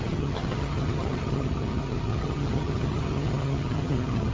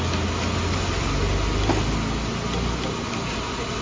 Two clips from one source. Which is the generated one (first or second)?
first